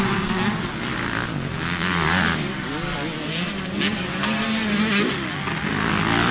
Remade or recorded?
recorded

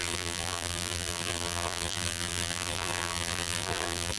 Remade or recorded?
remade